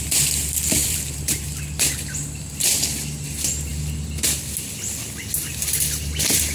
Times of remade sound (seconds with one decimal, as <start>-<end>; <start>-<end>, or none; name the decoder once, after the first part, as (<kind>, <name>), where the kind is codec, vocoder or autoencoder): 0.0-3.7 (vocoder, BigVGAN v2); 5.5-6.5